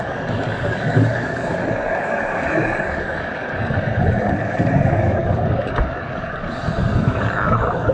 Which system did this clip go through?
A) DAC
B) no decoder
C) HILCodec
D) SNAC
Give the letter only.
A